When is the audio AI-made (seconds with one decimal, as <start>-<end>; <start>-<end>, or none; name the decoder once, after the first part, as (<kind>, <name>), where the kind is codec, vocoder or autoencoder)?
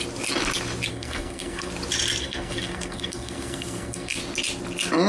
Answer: 0.9-1.7 (codec, SNAC); 2.2-4.2